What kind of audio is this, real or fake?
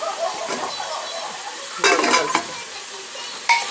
real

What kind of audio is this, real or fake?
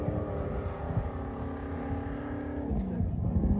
real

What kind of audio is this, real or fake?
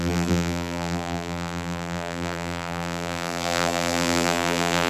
fake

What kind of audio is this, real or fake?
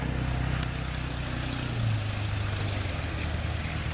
real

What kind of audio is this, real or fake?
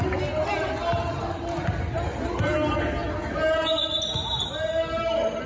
real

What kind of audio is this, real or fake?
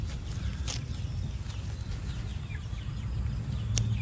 real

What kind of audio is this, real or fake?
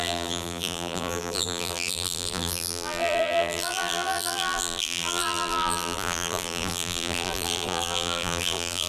fake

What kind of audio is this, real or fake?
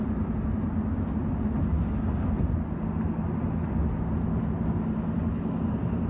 real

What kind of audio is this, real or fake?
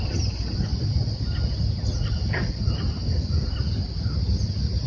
real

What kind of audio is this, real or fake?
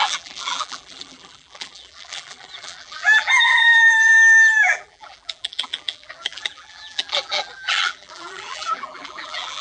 fake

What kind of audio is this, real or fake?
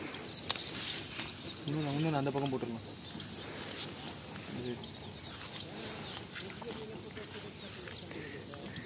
real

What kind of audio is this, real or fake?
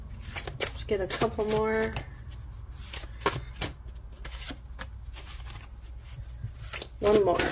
real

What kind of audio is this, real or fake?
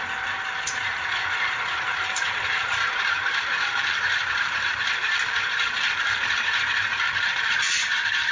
fake